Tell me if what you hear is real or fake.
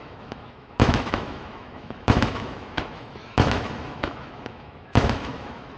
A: fake